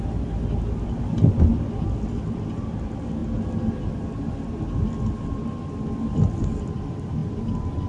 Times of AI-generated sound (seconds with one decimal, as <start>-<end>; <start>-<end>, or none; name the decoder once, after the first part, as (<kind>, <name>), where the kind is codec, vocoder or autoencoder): none